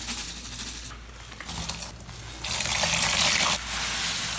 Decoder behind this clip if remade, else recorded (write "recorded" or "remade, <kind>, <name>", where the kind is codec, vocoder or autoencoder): recorded